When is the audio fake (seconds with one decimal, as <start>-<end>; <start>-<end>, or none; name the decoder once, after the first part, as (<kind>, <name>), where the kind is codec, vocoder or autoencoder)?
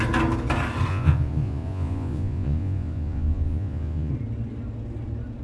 0.9-4.1 (vocoder, Vocos)